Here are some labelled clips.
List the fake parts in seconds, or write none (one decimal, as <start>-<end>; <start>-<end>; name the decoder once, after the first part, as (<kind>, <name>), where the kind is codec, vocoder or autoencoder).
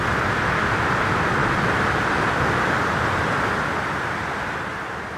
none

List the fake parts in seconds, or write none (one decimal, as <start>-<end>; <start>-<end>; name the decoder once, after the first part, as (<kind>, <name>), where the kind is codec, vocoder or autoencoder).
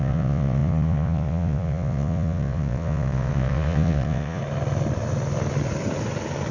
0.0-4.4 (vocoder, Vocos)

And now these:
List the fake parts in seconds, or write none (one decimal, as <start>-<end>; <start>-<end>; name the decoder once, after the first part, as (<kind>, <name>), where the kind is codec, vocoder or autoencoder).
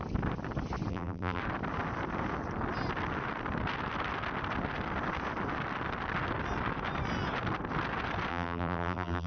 0.9-1.4 (vocoder, BigVGAN v2); 8.3-9.3